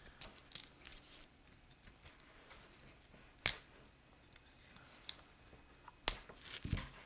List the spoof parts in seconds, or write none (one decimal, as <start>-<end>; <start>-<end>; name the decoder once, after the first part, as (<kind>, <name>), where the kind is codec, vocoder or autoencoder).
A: 0.9-2.6 (vocoder, BigVGAN v2)